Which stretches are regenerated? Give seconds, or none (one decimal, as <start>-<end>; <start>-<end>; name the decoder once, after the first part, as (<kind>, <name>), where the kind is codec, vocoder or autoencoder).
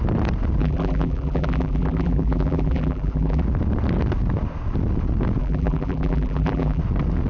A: 0.6-3.4 (vocoder, BigVGAN v2); 5.4-6.8